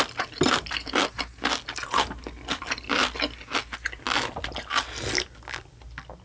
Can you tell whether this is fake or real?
real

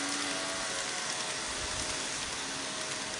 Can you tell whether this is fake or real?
real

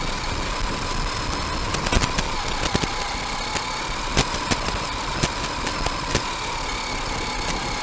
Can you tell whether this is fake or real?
real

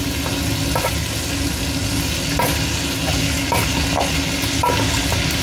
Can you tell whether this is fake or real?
real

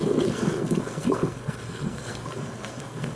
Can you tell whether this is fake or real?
fake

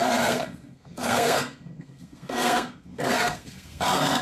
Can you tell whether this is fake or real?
fake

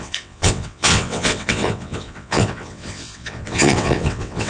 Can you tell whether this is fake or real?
fake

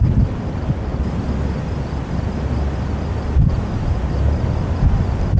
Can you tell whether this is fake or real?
real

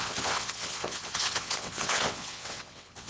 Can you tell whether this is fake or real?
fake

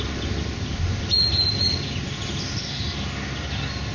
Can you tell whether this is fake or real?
real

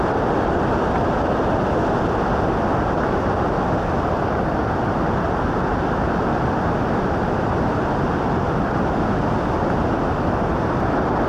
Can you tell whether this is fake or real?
real